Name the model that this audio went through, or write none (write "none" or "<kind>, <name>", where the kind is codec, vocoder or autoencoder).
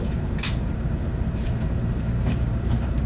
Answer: vocoder, BigVGAN v2